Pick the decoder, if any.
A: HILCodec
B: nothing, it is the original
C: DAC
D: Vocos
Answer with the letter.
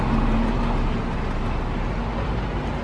B